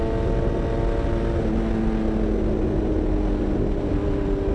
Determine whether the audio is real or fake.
real